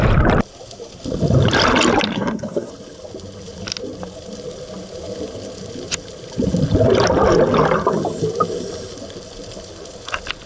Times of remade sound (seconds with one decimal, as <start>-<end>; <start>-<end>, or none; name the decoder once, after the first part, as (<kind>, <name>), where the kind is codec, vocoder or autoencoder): 2.1-2.7 (codec, SNAC)